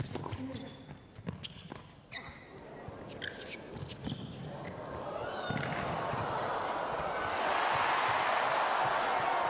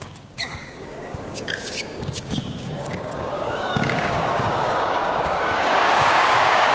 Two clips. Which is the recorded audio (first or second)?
first